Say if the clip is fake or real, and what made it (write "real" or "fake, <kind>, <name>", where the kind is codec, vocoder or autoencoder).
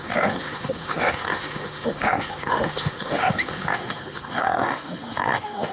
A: fake, autoencoder, DAC-VAE